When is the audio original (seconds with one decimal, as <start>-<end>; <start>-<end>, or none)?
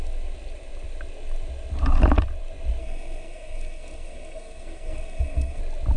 0.0-2.8; 5.6-6.0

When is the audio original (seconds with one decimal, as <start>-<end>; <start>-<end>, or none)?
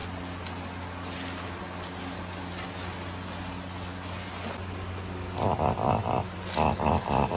0.0-7.4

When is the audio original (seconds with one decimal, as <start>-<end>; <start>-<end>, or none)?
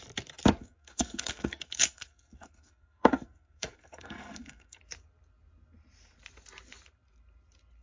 0.0-0.6; 4.8-7.8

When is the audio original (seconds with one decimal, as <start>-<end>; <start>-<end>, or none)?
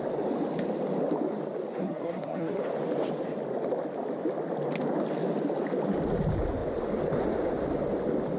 0.0-1.8; 2.6-8.4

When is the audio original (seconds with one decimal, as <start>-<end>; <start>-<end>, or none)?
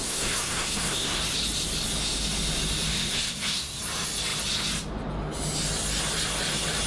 1.2-2.9; 3.8-6.9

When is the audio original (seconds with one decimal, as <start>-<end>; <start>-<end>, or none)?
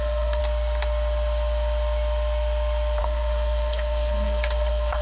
0.4-3.0